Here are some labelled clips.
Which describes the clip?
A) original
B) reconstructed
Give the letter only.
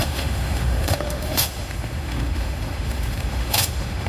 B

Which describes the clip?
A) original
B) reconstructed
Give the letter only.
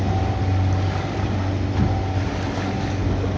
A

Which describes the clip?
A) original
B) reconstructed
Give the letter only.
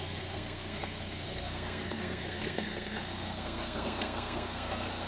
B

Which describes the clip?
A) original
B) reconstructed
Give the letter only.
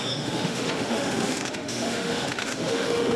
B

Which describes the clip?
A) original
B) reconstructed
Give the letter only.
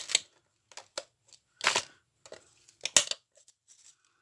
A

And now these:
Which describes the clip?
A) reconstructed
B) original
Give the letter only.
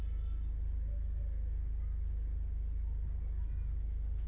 B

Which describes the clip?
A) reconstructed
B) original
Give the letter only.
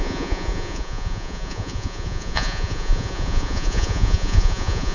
A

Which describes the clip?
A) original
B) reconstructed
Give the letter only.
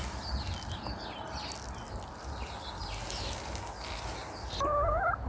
A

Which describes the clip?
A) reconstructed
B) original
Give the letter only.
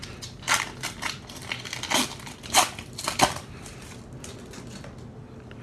B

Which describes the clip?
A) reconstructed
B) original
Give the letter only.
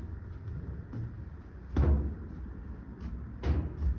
B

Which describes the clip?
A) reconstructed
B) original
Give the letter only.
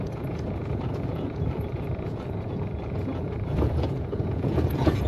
A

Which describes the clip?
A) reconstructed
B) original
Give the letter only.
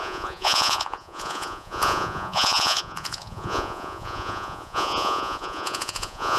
A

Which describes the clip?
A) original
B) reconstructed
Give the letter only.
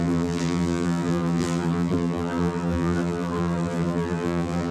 B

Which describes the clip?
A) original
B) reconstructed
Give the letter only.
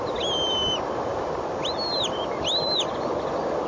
A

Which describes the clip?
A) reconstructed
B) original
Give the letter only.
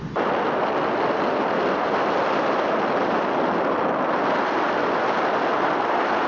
B